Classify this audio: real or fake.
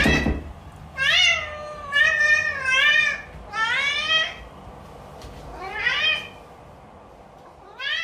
real